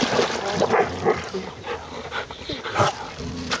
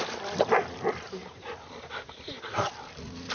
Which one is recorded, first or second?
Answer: first